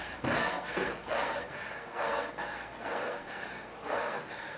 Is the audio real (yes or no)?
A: no